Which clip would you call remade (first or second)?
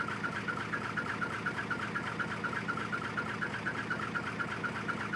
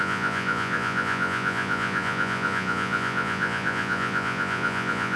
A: second